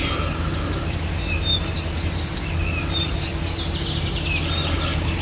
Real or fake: real